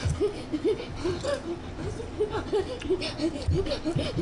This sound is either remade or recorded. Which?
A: recorded